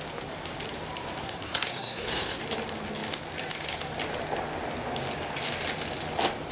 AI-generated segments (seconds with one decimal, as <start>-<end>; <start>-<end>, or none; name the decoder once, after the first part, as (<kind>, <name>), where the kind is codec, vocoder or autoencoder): 1.2-2.4 (codec, SNAC)